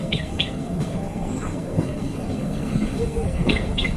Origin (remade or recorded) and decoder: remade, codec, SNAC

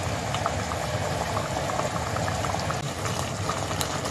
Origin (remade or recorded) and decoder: recorded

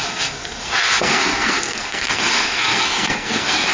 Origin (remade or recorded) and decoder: remade, codec, SNAC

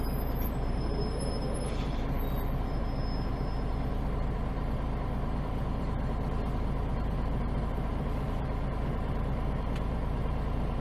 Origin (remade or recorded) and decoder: remade, vocoder, BigVGAN v2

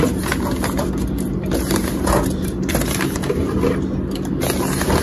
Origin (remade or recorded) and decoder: recorded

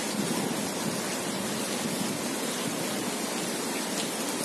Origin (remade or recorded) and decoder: recorded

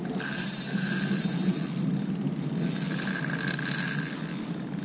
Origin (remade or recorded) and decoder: recorded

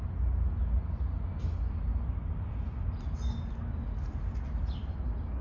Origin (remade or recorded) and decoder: recorded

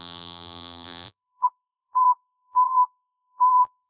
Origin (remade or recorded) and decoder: remade, vocoder, BigVGAN v2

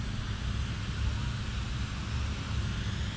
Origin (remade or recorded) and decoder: recorded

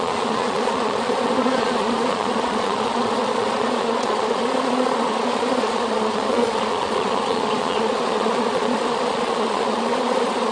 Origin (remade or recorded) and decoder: remade, vocoder, Vocos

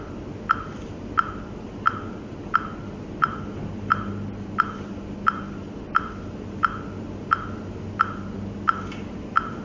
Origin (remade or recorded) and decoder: recorded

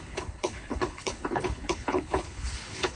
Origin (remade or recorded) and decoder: remade, codec, HILCodec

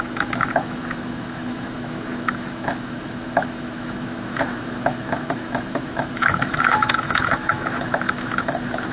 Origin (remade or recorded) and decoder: remade, autoencoder, DAC-VAE